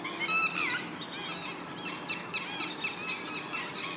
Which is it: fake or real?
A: real